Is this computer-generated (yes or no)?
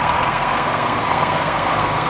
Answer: yes